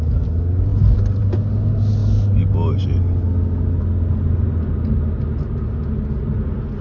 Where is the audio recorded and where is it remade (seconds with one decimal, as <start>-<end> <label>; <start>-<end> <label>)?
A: 0.0-0.7 recorded; 0.7-1.2 remade; 1.2-6.8 recorded